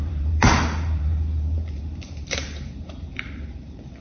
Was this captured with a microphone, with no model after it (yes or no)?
no